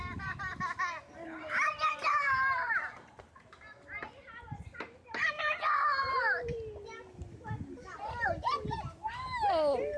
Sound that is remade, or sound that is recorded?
remade